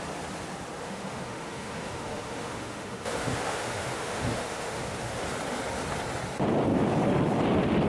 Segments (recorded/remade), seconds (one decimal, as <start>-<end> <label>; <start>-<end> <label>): 0.0-0.8 recorded; 0.8-5.2 remade; 5.2-7.9 recorded